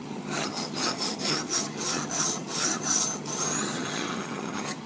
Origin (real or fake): fake